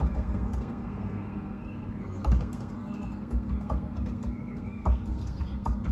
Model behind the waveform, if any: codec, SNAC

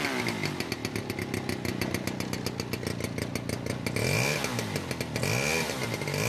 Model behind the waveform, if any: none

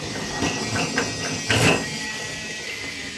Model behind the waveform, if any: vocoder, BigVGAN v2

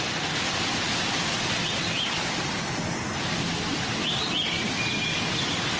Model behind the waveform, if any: none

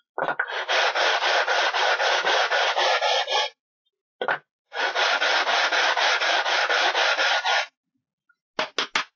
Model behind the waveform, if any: none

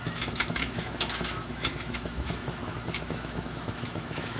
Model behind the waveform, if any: autoencoder, DAC-VAE